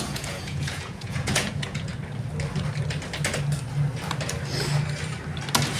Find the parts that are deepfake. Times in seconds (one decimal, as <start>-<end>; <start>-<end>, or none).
0.0-1.9